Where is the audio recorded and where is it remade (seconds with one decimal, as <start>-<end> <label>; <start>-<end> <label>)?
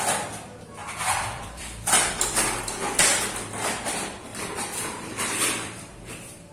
0.0-0.8 recorded; 0.8-2.6 remade; 2.6-4.3 recorded; 4.3-6.5 remade